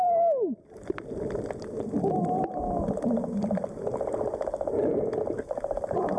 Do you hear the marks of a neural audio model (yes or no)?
no